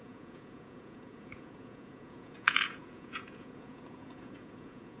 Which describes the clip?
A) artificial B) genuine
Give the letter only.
A